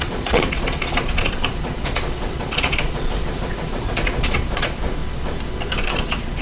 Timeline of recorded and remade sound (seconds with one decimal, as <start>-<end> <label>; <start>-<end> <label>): 0.0-5.0 remade; 5.0-5.9 recorded; 5.9-6.4 remade